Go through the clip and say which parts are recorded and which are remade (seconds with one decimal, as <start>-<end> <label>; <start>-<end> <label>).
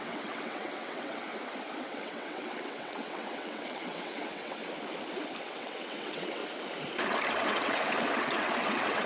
0.0-1.3 remade; 1.3-1.8 recorded; 1.8-4.6 remade; 4.6-5.4 recorded; 5.4-6.4 remade; 6.4-7.3 recorded; 7.3-9.1 remade